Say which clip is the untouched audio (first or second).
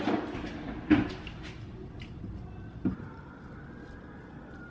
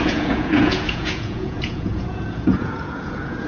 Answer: first